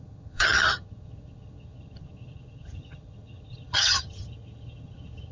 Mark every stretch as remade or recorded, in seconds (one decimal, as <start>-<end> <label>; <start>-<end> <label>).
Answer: 0.0-5.3 remade